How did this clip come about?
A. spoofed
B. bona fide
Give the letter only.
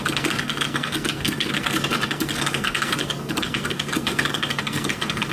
A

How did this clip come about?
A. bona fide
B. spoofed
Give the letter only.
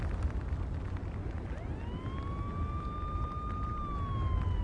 A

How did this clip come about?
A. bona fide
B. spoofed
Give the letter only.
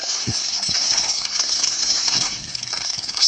B